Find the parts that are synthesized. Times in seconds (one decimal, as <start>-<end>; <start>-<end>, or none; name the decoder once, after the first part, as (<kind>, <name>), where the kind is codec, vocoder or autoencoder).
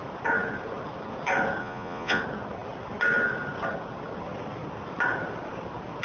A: 1.6-2.2 (vocoder, Vocos)